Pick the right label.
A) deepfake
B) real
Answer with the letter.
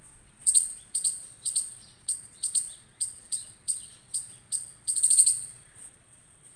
A